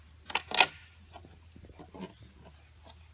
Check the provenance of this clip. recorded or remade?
recorded